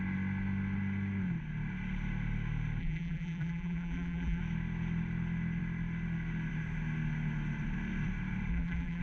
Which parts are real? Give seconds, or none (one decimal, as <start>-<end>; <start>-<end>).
0.0-2.8; 4.4-8.5